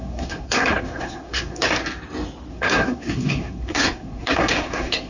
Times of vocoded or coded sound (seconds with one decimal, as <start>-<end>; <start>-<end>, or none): 0.0-1.8; 2.5-5.1